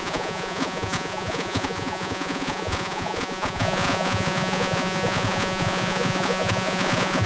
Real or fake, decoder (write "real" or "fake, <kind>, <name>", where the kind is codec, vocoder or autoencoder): fake, vocoder, Vocos